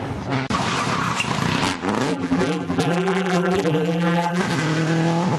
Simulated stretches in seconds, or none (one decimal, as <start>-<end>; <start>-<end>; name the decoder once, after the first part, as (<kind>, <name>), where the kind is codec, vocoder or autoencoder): 2.1-4.4 (vocoder, BigVGAN v2)